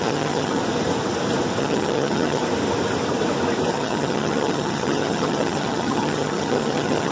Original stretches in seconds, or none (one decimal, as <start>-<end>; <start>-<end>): 0.6-1.6; 2.4-3.7